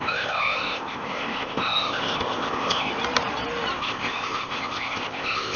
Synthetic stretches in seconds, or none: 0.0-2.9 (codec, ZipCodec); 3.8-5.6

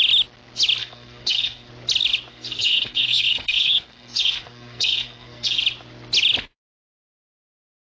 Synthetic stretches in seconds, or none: 0.8-1.7 (codec, SNAC); 2.3-5.6

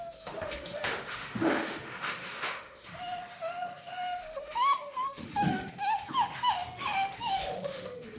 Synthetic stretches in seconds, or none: 0.0-8.2 (autoencoder, DAC-VAE)

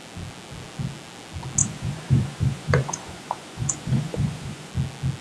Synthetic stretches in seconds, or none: 1.6-4.7 (vocoder, Vocos)

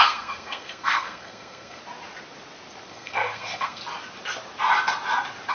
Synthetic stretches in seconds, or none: 0.0-1.8 (codec, SNAC); 2.9-3.8

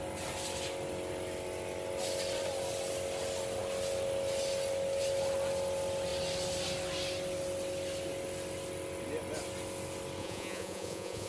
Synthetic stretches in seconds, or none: 10.2-11.3 (vocoder, Vocos)